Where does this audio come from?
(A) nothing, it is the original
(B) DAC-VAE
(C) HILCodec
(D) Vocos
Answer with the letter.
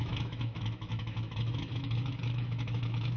B